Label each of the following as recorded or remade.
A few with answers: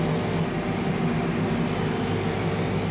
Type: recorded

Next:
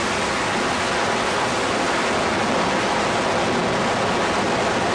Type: recorded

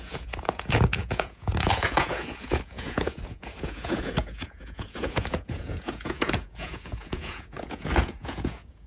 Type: remade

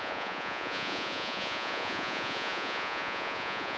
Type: remade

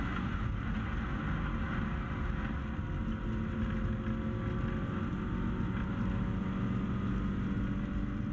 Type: recorded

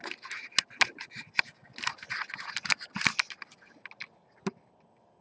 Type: recorded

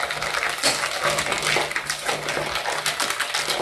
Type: recorded